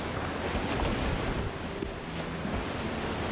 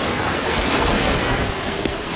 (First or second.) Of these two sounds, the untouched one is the first